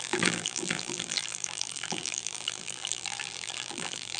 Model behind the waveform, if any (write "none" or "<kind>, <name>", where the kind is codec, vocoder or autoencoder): vocoder, BigVGAN v2